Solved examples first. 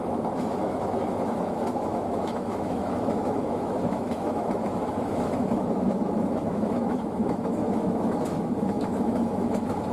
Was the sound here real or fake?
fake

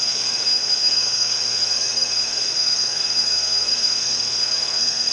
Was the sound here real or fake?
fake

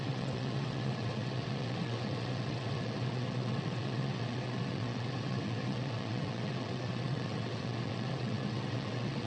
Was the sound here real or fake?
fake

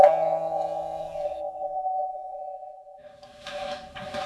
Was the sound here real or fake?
fake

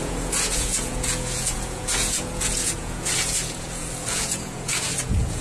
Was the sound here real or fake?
fake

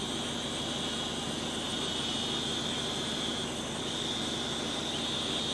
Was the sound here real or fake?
real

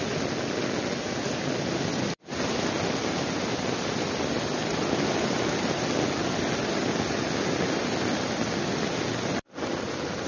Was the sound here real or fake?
real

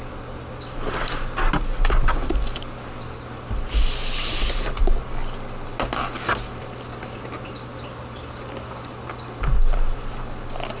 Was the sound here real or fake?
real